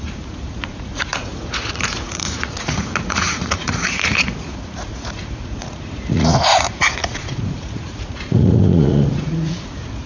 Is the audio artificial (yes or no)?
yes